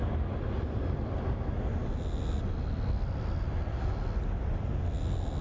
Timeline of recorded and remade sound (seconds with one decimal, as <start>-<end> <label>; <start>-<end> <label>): 0.0-5.4 recorded